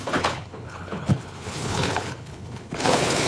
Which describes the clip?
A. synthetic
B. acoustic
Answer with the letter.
A